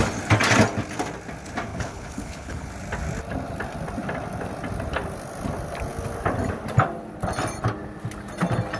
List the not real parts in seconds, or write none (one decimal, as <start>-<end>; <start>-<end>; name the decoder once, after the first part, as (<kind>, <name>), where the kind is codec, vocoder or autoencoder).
1.7-2.7 (codec, HILCodec)